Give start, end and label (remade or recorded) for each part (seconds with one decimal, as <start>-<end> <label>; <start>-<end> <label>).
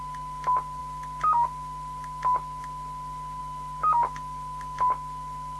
0.0-5.6 recorded